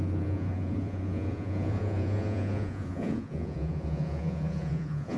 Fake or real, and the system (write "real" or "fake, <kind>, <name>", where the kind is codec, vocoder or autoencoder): fake, vocoder, Vocos